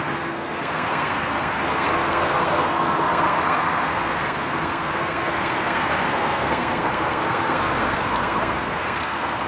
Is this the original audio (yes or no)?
no